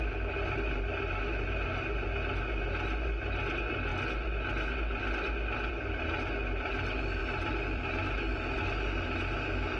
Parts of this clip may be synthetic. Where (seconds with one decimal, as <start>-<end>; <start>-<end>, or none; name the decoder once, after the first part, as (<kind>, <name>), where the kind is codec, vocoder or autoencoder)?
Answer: 7.2-8.6 (vocoder, BigVGAN v2)